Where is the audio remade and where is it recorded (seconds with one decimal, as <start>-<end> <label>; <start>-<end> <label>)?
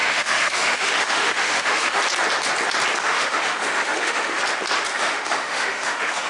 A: 0.0-2.0 remade; 2.0-3.0 recorded; 3.0-4.4 remade; 4.4-4.9 recorded; 4.9-6.3 remade